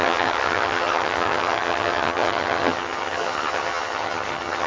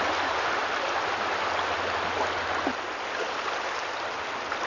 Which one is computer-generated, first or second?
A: first